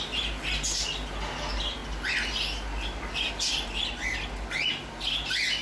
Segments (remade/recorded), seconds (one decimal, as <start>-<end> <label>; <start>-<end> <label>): 0.0-5.6 recorded